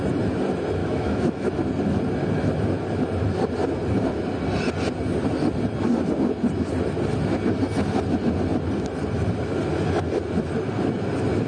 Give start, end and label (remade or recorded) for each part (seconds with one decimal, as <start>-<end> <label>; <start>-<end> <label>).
0.0-0.8 recorded; 0.8-1.5 remade; 1.5-11.5 recorded